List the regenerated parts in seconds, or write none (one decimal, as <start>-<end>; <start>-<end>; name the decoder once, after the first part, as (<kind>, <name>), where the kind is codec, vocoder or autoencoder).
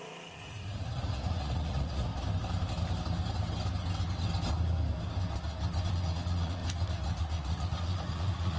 0.0-2.1 (vocoder, Vocos); 5.9-6.6; 7.2-8.6